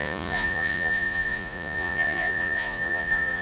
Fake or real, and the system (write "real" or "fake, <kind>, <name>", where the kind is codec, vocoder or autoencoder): fake, vocoder, Vocos